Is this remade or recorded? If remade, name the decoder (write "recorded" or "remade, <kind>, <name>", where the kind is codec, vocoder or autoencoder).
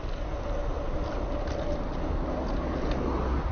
recorded